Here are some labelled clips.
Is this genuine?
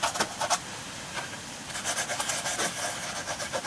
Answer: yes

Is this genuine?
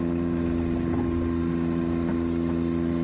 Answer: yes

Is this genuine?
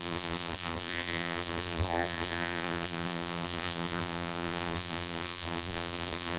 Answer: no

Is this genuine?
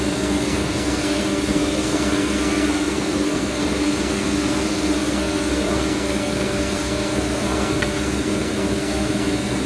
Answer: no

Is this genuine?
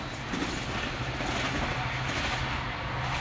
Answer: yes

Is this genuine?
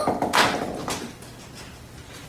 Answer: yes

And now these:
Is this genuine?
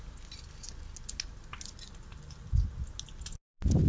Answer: yes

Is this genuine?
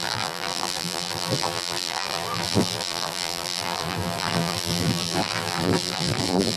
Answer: no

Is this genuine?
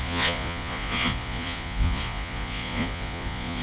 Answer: no